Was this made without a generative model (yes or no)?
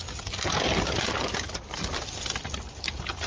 yes